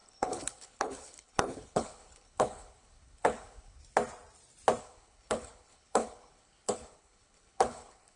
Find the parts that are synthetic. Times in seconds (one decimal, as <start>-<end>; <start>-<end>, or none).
0.0-3.8; 4.8-8.2